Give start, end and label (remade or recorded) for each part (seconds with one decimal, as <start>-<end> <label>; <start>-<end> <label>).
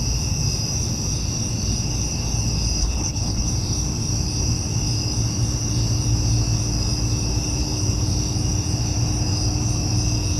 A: 0.0-2.8 recorded; 2.8-3.5 remade; 3.5-10.4 recorded